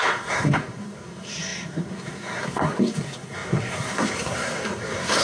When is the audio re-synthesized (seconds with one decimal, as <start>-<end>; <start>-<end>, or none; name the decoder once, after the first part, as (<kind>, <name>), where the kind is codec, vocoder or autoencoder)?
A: 0.0-5.2 (codec, SNAC)